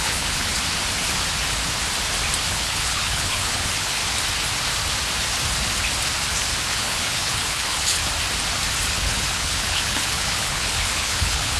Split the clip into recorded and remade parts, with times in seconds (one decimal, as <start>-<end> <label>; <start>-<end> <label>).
0.0-0.5 remade; 0.5-2.5 recorded; 2.5-4.0 remade; 4.0-6.7 recorded; 6.7-8.0 remade; 8.0-8.9 recorded; 8.9-11.6 remade